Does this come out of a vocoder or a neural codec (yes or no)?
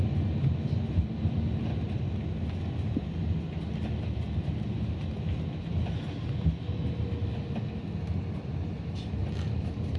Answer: no